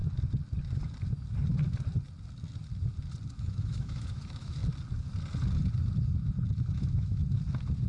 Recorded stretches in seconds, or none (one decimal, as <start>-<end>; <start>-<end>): 0.0-3.3; 4.6-6.6; 7.2-7.9